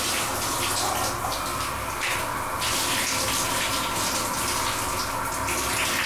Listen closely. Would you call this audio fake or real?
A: real